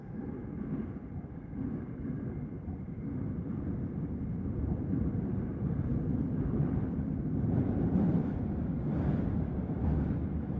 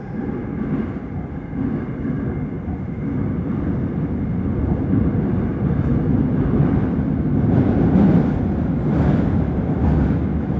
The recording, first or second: second